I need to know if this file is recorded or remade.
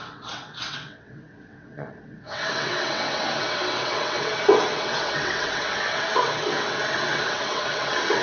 remade